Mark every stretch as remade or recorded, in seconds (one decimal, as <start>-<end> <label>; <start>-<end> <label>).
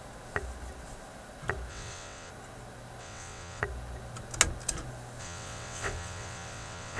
0.0-1.7 recorded; 1.7-2.3 remade; 2.3-3.0 recorded; 3.0-3.6 remade; 3.6-5.2 recorded; 5.2-7.0 remade